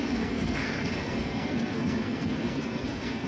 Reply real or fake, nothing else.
fake